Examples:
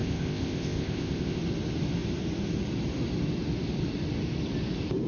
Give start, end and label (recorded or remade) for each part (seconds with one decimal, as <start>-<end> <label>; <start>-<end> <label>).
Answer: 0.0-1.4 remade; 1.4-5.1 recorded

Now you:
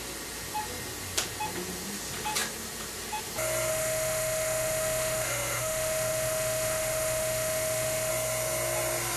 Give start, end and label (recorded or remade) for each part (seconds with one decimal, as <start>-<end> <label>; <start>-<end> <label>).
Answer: 0.0-3.7 recorded; 3.7-8.1 remade; 8.1-9.2 recorded

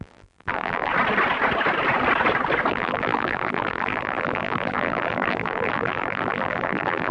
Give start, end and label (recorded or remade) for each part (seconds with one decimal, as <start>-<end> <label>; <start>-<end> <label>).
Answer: 0.0-0.9 remade; 0.9-2.7 recorded; 2.7-7.1 remade

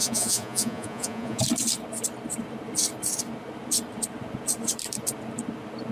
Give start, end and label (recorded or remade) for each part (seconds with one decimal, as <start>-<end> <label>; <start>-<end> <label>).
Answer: 0.0-1.4 remade; 1.4-5.9 recorded

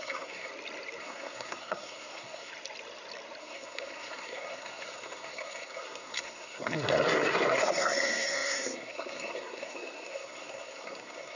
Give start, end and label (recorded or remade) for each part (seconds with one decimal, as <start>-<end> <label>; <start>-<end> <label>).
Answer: 0.0-0.5 remade; 0.5-1.0 recorded; 1.0-2.5 remade; 2.5-3.4 recorded; 3.4-11.4 remade